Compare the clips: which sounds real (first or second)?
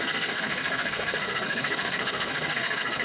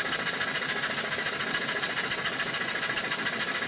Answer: second